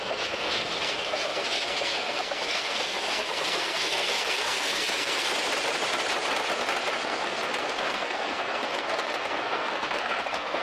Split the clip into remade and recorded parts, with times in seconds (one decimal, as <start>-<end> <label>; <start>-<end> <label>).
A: 0.0-5.3 remade; 5.3-7.0 recorded; 7.0-10.6 remade

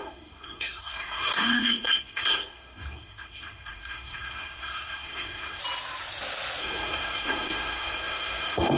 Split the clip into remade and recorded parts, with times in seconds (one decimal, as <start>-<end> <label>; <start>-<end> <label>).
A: 0.0-5.6 remade; 5.6-6.6 recorded; 6.6-8.8 remade

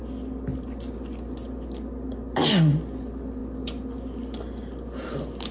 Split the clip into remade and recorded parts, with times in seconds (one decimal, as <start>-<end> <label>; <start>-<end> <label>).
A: 0.0-5.5 recorded

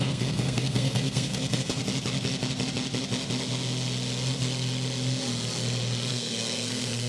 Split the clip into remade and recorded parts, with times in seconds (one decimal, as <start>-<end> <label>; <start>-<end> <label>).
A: 0.0-1.8 remade; 1.8-6.1 recorded; 6.1-7.1 remade